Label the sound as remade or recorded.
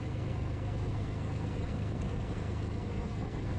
remade